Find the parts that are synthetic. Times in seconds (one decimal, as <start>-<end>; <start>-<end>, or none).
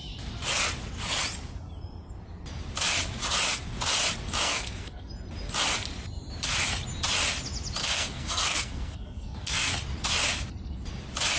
4.4-5.1; 7.8-9.7